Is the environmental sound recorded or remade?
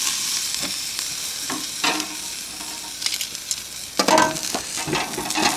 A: recorded